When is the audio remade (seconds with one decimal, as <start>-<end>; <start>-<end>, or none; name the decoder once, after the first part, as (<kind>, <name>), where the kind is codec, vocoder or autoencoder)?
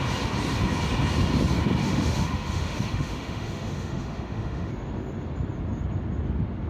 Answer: 1.8-4.7 (autoencoder, DAC-VAE)